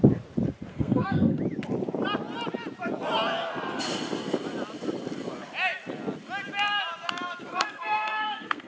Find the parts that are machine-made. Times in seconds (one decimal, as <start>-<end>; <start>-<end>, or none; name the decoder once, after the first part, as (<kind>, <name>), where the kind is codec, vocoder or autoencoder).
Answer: 0.7-1.4 (codec, SNAC); 7.5-8.7